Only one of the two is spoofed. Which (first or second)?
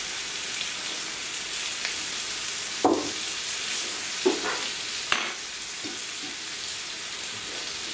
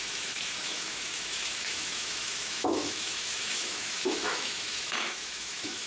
second